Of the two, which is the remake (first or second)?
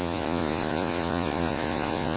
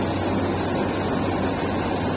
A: first